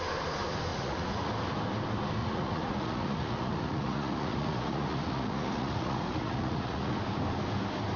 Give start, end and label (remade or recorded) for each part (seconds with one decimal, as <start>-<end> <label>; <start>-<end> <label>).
0.0-0.7 recorded; 0.7-1.3 remade; 1.3-2.2 recorded; 2.2-7.0 remade; 7.0-8.0 recorded